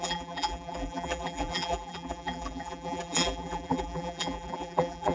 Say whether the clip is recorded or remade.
remade